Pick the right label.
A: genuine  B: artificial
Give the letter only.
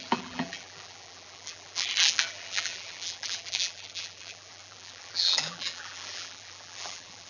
B